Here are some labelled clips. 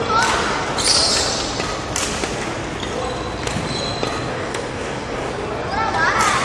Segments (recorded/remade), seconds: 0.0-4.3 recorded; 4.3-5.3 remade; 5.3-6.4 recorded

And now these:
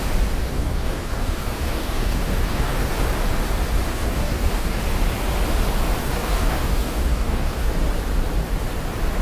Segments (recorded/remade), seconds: 0.0-0.4 recorded; 0.4-2.9 remade; 2.9-3.9 recorded; 3.9-4.8 remade; 4.8-6.0 recorded; 6.0-7.7 remade; 7.7-9.2 recorded

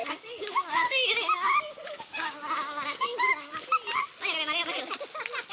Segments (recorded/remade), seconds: 0.0-3.3 remade; 3.3-5.5 recorded